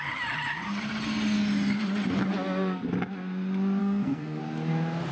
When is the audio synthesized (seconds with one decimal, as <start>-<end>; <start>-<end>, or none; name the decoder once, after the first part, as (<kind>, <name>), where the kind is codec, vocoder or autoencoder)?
3.8-4.4 (codec, SNAC)